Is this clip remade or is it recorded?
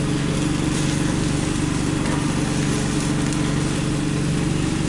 recorded